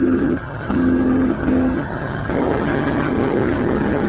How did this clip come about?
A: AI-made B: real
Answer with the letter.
A